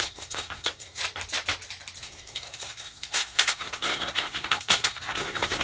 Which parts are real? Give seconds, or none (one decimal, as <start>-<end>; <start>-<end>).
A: 1.0-2.0